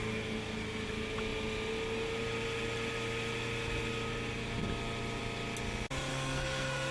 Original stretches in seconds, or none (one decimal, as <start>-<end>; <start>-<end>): 0.0-6.1